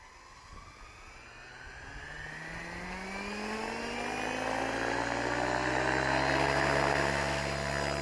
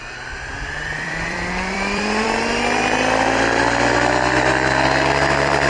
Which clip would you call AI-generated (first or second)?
second